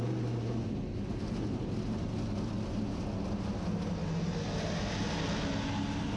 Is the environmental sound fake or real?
real